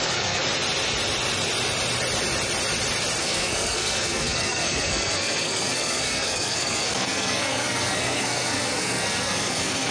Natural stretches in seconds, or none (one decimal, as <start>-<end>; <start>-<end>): 0.4-3.2